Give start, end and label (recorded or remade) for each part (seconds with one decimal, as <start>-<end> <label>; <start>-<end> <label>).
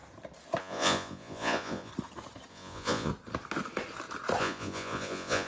0.0-0.6 recorded; 0.6-1.9 remade; 1.9-2.5 recorded; 2.5-3.1 remade; 3.1-4.4 recorded; 4.4-5.5 remade